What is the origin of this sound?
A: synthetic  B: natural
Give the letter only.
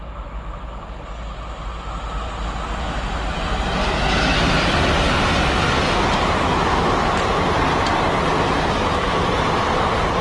B